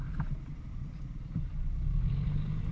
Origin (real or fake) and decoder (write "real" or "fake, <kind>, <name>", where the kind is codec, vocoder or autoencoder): fake, vocoder, BigVGAN v2